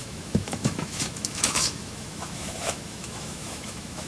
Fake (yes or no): yes